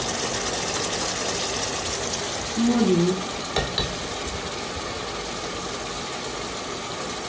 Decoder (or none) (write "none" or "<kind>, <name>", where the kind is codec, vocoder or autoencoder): none